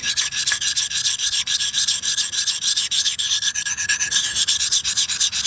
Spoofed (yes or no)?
no